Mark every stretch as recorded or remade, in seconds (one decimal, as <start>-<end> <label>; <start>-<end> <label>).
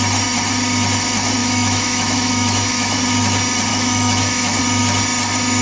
0.0-1.4 recorded; 1.4-3.0 remade; 3.0-3.7 recorded; 3.7-4.6 remade; 4.6-5.6 recorded